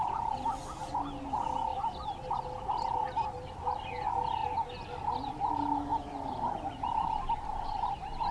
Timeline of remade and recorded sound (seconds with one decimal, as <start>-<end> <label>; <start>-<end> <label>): 0.0-1.7 recorded; 1.7-2.3 remade; 2.3-5.9 recorded; 5.9-8.3 remade